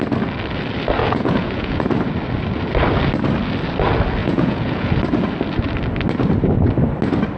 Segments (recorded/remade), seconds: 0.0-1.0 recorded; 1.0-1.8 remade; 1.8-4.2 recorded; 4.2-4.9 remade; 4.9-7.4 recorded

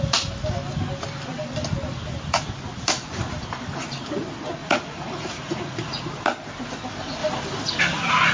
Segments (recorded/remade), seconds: 0.0-4.6 recorded; 4.6-6.0 remade; 6.0-8.3 recorded

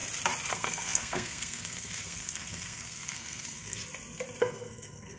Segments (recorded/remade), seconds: 0.0-0.5 recorded; 0.5-3.8 remade; 3.8-4.4 recorded; 4.4-5.2 remade

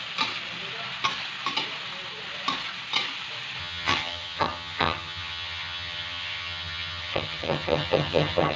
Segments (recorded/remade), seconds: 0.0-3.6 recorded; 3.6-8.6 remade

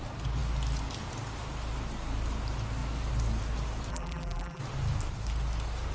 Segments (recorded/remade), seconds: 0.0-3.9 recorded; 3.9-4.6 remade; 4.6-5.9 recorded

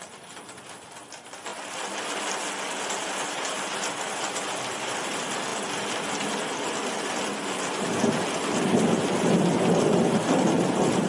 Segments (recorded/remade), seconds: 0.0-11.1 recorded

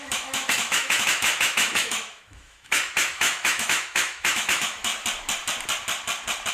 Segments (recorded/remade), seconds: 0.0-4.9 remade; 4.9-6.5 recorded

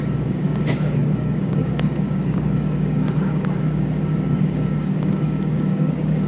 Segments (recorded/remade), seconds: 0.0-6.3 remade